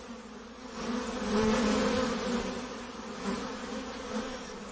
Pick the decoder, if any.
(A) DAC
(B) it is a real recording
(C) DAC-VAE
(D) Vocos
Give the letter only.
B